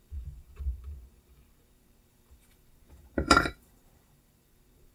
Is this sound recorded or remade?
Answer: remade